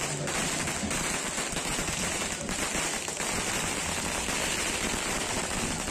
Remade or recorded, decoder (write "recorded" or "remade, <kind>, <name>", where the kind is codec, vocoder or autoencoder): recorded